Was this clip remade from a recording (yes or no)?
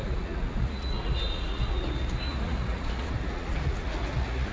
yes